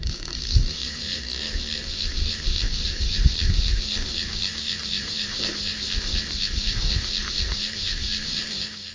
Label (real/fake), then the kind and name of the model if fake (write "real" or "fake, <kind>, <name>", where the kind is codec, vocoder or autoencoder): fake, autoencoder, DAC-VAE